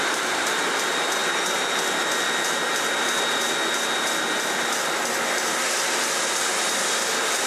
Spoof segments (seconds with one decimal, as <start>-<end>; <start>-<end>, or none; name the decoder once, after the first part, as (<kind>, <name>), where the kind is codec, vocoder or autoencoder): none